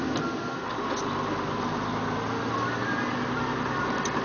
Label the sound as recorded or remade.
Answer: recorded